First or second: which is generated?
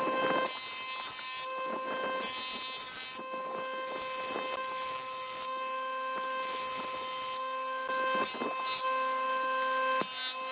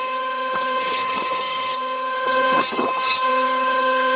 second